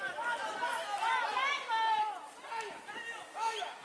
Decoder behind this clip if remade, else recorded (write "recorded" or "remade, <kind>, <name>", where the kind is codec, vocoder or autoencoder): recorded